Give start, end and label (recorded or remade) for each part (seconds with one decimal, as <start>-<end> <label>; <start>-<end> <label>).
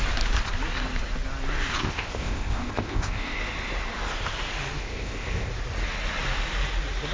0.0-1.8 recorded; 1.8-3.4 remade; 3.4-4.8 recorded; 4.8-5.5 remade; 5.5-7.1 recorded